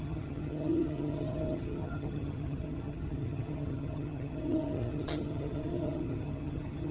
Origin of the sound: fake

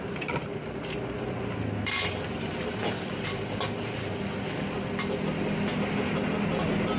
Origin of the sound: real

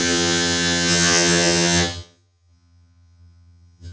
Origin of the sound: fake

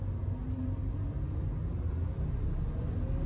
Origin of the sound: real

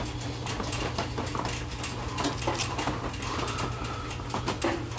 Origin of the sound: real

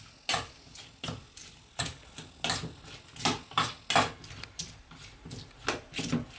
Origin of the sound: real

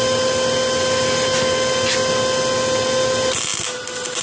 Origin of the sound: real